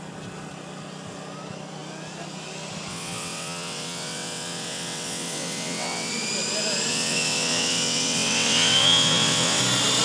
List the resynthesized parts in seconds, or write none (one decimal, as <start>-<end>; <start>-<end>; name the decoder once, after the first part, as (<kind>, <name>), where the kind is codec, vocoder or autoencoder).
2.9-6.1 (vocoder, WaveNeXt); 6.9-9.6